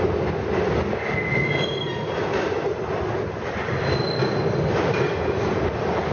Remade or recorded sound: recorded